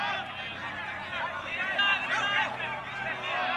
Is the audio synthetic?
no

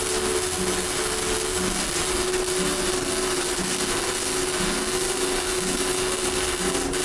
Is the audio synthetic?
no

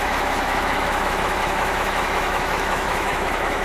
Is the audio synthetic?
yes